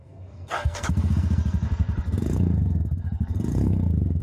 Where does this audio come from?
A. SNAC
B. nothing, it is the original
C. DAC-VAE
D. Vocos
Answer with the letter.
A